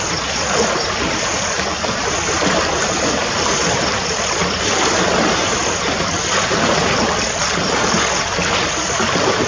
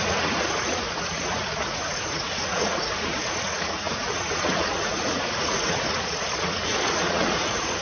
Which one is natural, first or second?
first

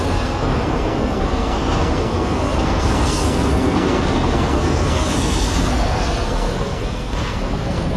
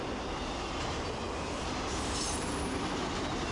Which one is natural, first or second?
second